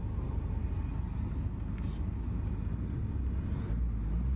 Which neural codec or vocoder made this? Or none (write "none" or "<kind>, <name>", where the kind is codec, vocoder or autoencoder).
none